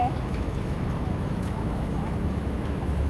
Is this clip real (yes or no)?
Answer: no